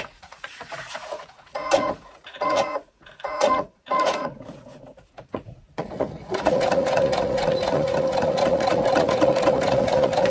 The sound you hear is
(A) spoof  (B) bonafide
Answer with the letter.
A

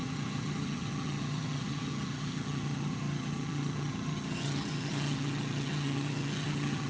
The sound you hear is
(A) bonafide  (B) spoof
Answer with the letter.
B